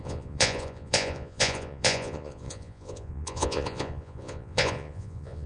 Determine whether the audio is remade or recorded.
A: remade